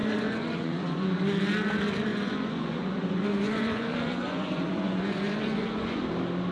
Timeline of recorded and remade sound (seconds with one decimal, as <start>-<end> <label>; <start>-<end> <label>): 0.0-1.0 remade; 1.0-2.1 recorded; 2.1-6.0 remade; 6.0-6.5 recorded